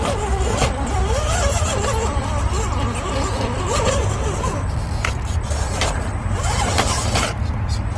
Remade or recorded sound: recorded